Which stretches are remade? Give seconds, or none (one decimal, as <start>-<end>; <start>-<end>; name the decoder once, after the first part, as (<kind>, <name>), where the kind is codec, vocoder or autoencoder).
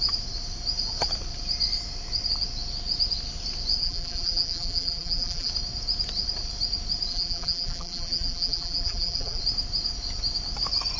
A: 3.8-5.5 (vocoder, BigVGAN v2); 7.1-9.4